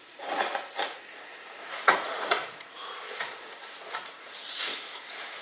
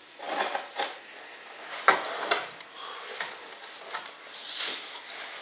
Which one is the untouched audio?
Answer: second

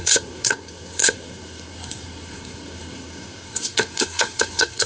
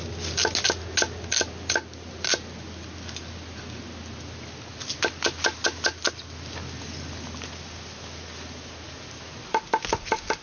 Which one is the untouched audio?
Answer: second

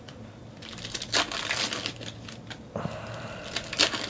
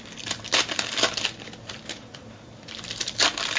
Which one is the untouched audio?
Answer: first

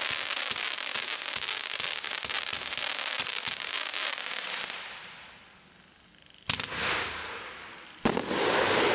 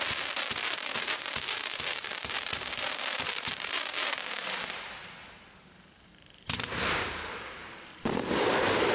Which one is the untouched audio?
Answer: first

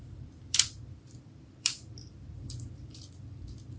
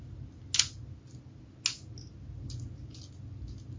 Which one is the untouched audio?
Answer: second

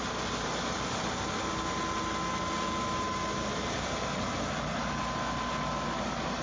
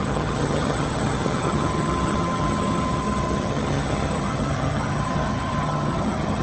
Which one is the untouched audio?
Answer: first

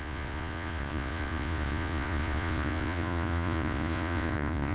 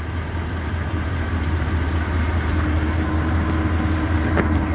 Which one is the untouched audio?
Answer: second